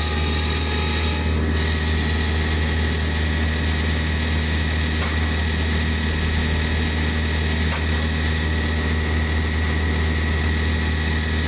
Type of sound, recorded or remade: recorded